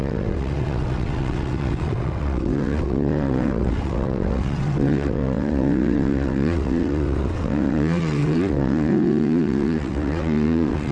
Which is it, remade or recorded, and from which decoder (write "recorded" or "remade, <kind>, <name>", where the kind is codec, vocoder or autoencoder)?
remade, vocoder, WaveNeXt